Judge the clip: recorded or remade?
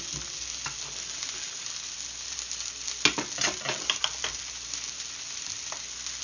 recorded